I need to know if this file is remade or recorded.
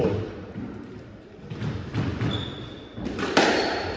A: recorded